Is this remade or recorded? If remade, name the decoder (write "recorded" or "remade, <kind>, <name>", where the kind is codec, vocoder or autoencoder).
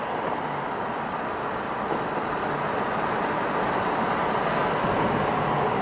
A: recorded